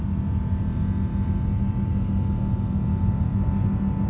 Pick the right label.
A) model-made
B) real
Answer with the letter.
B